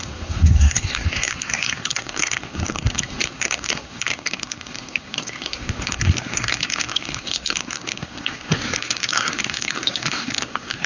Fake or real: fake